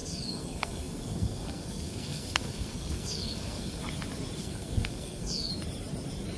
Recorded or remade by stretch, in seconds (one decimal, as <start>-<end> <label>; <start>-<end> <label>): 0.0-3.8 remade; 3.8-4.4 recorded; 4.4-5.5 remade; 5.5-6.4 recorded